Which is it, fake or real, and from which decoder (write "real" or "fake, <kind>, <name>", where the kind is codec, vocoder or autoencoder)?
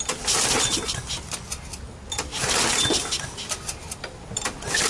real